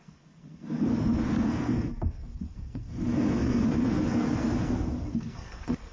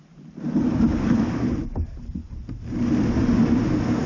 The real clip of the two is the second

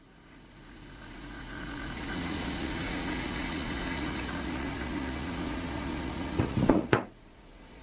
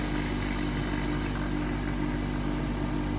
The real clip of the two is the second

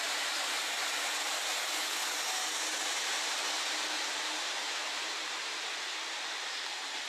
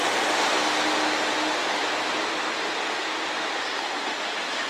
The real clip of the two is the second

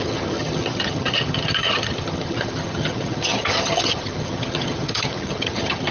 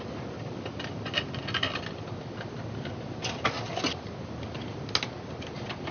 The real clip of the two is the second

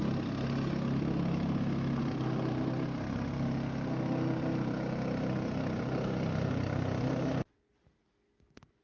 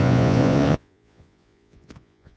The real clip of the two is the first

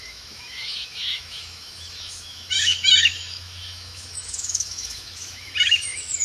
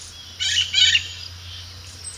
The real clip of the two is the second